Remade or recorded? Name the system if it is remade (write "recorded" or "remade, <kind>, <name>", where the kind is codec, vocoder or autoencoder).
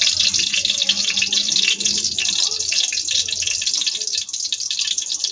recorded